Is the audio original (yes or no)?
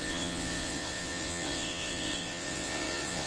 no